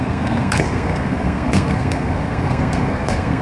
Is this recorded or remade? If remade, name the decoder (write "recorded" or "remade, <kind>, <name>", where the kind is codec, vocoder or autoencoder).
remade, codec, SNAC